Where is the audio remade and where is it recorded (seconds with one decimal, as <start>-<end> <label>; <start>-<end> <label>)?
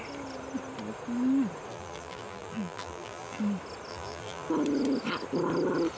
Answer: 0.0-1.7 recorded; 1.7-3.4 remade; 3.4-3.9 recorded; 3.9-4.5 remade; 4.5-6.0 recorded